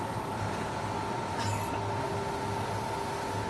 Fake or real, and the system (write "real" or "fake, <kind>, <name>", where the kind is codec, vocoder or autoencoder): real